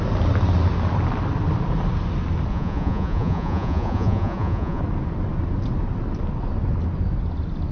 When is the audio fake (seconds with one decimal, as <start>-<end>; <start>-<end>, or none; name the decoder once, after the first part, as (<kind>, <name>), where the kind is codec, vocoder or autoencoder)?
2.5-4.8 (vocoder, Vocos)